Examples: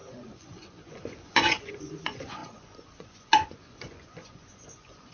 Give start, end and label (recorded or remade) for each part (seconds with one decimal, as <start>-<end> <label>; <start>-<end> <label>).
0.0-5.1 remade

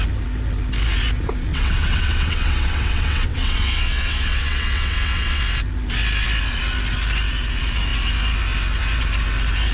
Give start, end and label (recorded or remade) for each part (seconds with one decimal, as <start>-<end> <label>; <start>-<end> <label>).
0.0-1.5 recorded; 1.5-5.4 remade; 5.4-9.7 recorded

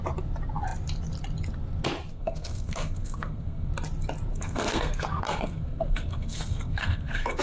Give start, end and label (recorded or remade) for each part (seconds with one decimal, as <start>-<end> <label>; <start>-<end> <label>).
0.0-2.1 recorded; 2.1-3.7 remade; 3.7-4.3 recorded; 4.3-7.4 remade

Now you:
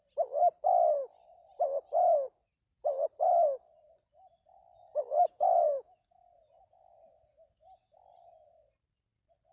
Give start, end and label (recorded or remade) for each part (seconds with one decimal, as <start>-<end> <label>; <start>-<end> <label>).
0.0-5.1 recorded; 5.1-8.5 remade; 8.5-9.5 recorded

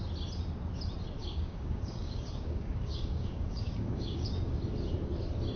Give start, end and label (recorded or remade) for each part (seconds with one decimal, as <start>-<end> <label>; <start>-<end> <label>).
0.0-1.2 recorded; 1.2-4.6 remade; 4.6-5.6 recorded

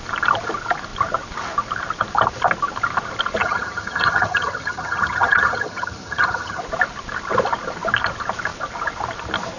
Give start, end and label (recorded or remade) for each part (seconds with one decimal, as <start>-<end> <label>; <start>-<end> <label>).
0.0-3.4 recorded; 3.4-6.6 remade; 6.6-9.6 recorded